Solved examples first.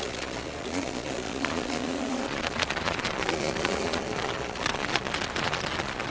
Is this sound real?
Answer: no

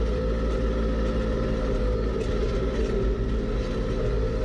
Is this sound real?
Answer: yes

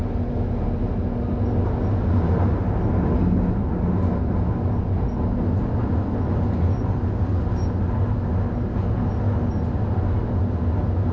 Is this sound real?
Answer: yes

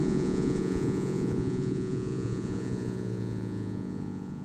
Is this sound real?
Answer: no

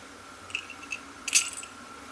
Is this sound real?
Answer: yes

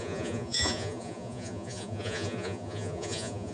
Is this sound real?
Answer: no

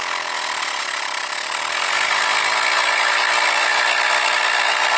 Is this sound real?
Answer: yes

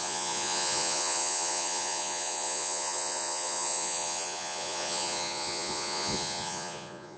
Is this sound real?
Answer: no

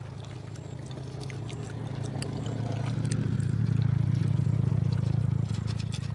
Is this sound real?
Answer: yes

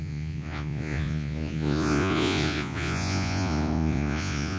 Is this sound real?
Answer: no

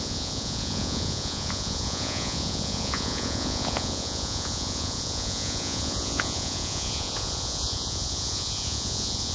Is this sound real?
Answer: no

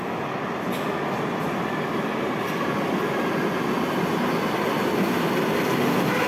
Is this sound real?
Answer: yes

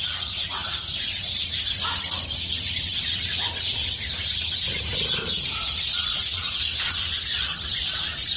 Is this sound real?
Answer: no